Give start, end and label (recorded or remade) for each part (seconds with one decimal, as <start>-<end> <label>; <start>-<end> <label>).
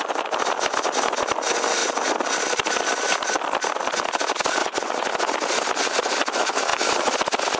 0.0-4.6 recorded; 4.6-5.1 remade; 5.1-7.6 recorded